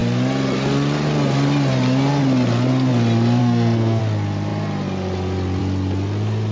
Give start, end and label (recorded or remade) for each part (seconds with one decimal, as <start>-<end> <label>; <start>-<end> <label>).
0.0-3.4 recorded; 3.4-4.0 remade; 4.0-6.5 recorded